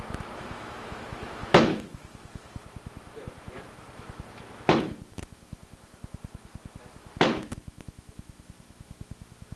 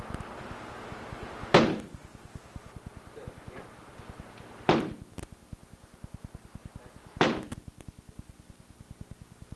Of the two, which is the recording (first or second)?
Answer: second